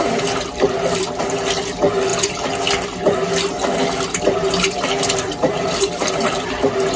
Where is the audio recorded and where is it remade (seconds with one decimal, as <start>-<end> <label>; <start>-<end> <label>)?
0.0-7.0 recorded